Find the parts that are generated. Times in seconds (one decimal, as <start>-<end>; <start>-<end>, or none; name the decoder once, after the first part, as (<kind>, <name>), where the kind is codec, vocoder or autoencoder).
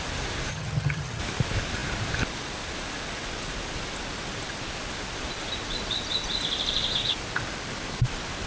0.5-1.2 (vocoder, HiFi-GAN)